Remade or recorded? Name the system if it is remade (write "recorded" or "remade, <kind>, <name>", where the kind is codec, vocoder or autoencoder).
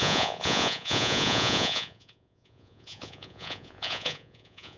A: remade, vocoder, Vocos